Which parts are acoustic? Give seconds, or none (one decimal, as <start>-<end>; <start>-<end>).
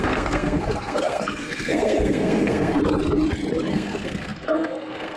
2.8-3.7